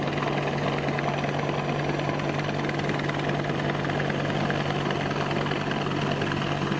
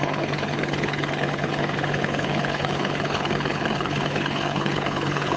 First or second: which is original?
first